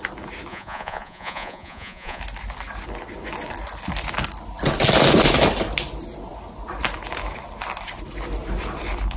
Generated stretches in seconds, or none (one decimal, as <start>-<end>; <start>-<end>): 0.5-2.2